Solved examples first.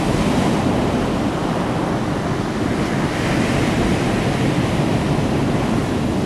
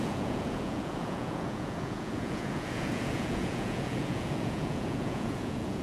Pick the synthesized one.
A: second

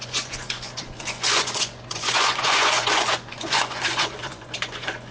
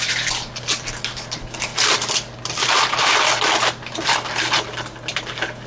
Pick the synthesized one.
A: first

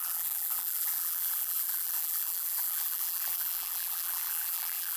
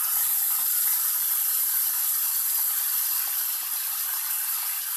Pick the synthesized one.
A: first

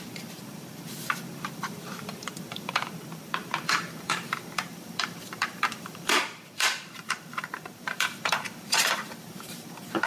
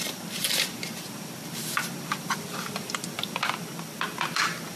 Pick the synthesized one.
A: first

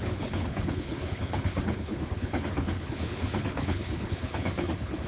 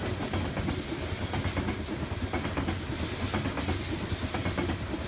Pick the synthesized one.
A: first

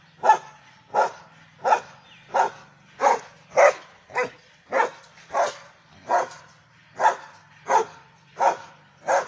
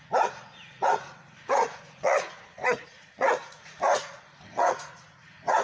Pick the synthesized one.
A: second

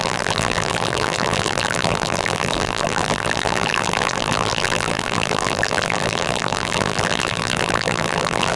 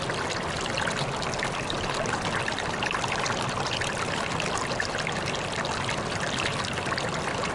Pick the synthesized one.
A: first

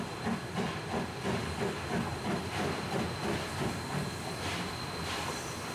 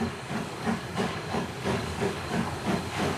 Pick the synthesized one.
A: second